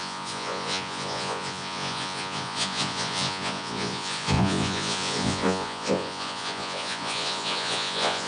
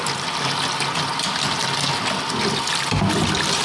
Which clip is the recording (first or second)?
second